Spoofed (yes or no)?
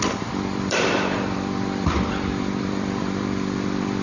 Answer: yes